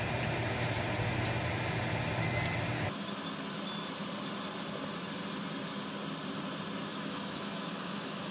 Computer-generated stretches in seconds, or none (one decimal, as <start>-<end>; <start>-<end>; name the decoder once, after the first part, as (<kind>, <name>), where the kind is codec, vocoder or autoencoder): 6.9-8.3 (autoencoder, DAC-VAE)